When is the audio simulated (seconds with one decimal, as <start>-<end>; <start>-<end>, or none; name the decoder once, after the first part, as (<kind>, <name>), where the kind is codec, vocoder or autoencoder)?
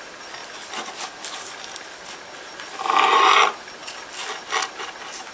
none